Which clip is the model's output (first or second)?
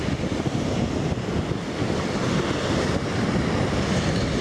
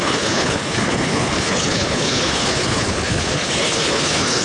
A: second